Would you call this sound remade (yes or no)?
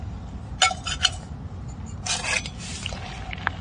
no